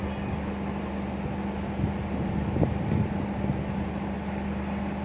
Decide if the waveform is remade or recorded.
recorded